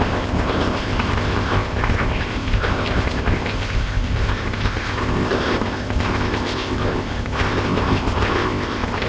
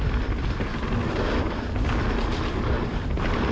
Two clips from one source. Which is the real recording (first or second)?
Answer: second